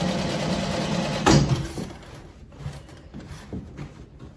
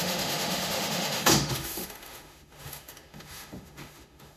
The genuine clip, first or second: first